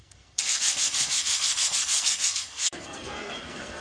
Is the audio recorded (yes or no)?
no